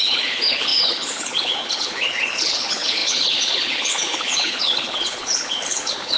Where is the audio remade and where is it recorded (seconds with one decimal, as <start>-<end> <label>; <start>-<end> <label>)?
0.0-6.2 remade